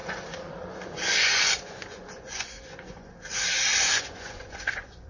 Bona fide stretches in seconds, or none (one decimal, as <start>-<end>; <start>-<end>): 3.1-3.7